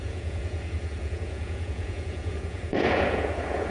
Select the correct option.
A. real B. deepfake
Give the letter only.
B